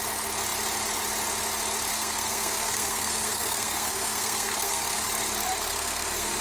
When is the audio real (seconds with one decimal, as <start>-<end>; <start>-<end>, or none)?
0.0-1.9; 5.1-5.6